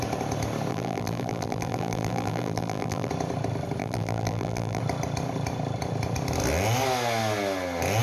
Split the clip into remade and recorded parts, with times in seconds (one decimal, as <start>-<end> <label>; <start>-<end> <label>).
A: 0.0-0.7 recorded; 0.7-3.1 remade; 3.1-3.8 recorded; 3.8-4.8 remade; 4.8-8.0 recorded